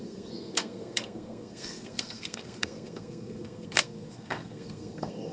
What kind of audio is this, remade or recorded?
remade